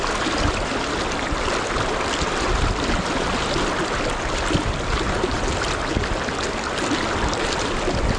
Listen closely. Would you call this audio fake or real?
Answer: real